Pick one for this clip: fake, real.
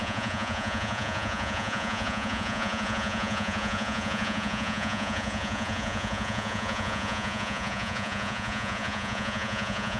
fake